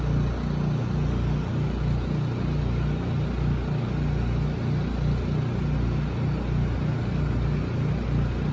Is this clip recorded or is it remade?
recorded